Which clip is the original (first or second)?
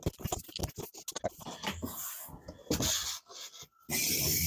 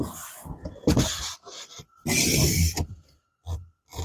first